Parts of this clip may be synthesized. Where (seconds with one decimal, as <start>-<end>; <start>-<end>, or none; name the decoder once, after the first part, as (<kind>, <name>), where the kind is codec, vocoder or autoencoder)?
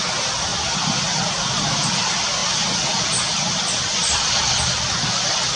none